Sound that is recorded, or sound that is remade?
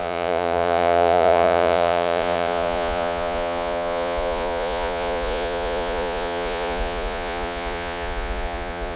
remade